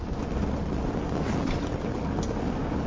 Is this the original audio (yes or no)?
yes